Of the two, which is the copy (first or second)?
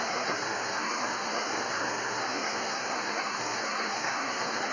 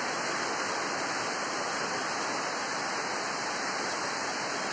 first